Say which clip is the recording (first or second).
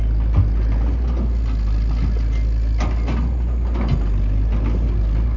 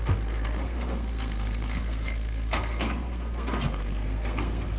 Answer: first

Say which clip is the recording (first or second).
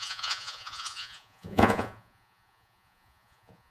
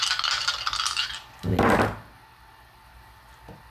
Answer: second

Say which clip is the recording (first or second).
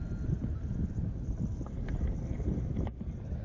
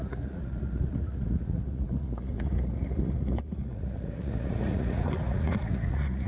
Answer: first